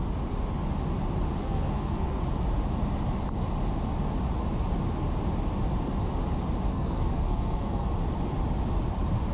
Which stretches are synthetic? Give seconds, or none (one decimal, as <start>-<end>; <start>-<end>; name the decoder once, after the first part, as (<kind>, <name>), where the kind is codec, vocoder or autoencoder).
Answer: 1.4-2.2 (codec, SNAC); 6.7-7.9